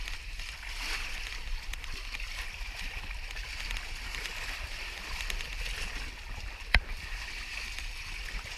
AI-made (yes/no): no